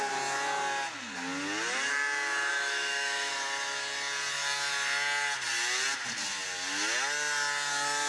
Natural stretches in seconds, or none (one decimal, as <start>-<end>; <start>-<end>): 0.0-2.5; 3.3-8.1